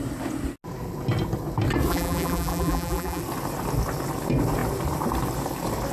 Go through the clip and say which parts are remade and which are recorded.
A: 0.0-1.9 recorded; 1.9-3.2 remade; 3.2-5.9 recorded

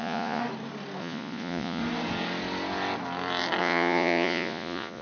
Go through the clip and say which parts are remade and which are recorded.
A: 0.0-0.4 remade; 0.4-1.0 recorded; 1.0-1.8 remade; 1.8-3.6 recorded; 3.6-5.0 remade

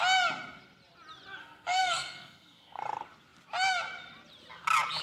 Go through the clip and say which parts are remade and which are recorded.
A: 0.0-1.4 recorded; 1.4-2.8 remade; 2.8-5.0 recorded

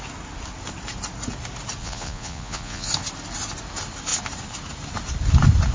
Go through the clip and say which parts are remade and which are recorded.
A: 0.0-1.8 recorded; 1.8-2.9 remade; 2.9-5.7 recorded

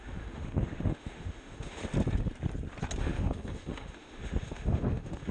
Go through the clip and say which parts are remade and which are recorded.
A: 0.0-1.8 remade; 1.8-3.0 recorded; 3.0-5.3 remade

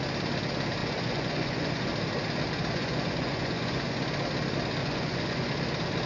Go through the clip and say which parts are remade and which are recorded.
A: 0.0-0.8 recorded; 0.8-1.9 remade; 1.9-2.7 recorded; 2.7-4.0 remade; 4.0-4.8 recorded; 4.8-5.5 remade; 5.5-6.1 recorded

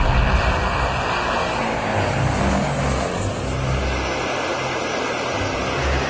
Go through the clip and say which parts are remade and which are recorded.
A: 0.0-4.5 recorded; 4.5-5.4 remade; 5.4-6.1 recorded

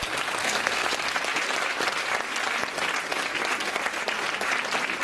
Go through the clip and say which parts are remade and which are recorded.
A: 0.0-0.4 recorded; 0.4-0.9 remade; 0.9-5.0 recorded